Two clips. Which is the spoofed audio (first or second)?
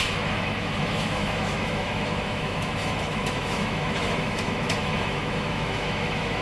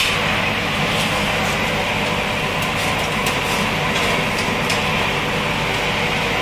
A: first